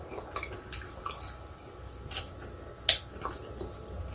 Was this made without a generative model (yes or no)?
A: yes